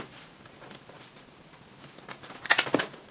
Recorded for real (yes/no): no